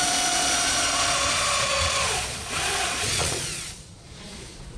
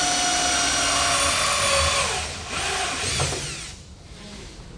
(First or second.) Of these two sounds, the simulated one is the first